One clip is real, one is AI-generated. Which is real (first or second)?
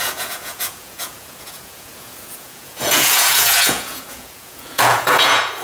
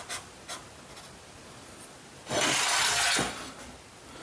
second